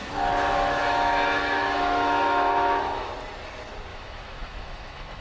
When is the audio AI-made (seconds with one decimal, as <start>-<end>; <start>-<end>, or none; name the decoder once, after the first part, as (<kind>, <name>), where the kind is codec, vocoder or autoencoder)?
0.0-3.1 (autoencoder, DAC-VAE); 3.9-5.2